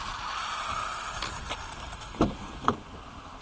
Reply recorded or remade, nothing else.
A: recorded